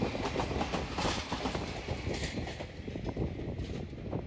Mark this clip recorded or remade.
recorded